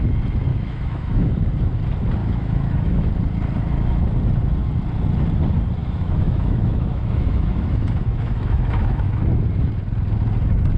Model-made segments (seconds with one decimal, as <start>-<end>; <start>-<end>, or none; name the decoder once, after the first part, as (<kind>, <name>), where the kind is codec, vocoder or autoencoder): 0.5-1.3 (autoencoder, DAC-VAE); 2.2-3.1; 5.8-9.2